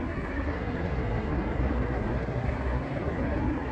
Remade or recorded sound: remade